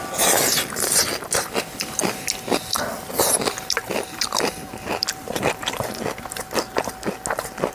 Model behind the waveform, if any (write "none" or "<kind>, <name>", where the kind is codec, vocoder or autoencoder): none